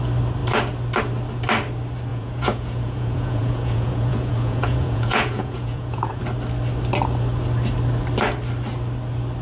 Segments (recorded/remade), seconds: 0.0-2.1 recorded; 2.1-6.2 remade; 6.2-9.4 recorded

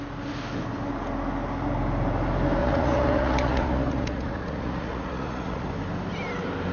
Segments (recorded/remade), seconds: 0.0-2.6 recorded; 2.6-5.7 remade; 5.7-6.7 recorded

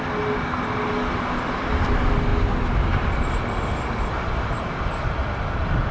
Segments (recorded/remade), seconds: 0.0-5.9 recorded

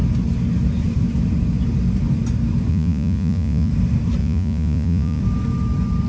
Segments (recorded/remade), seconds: 0.0-2.7 recorded; 2.7-3.7 remade; 3.7-4.2 recorded; 4.2-5.2 remade; 5.2-6.1 recorded

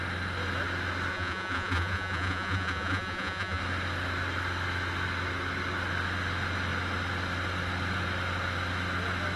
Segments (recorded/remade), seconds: 0.0-1.1 recorded; 1.1-3.6 remade; 3.6-9.4 recorded

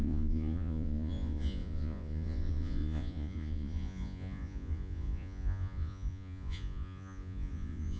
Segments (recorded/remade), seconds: 0.0-8.0 remade

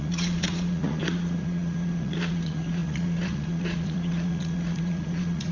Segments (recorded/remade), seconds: 0.0-5.5 remade